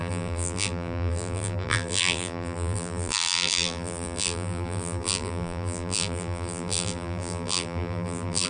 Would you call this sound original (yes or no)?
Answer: no